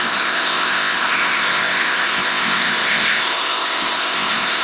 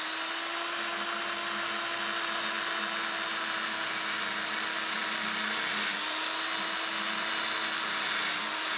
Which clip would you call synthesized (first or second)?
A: first